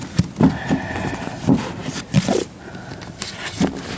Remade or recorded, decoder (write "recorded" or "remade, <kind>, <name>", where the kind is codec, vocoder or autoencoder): recorded